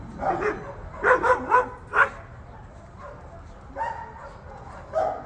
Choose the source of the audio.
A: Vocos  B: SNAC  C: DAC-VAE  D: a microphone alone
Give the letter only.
D